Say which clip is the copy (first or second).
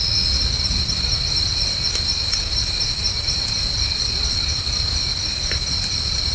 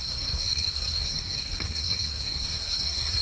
second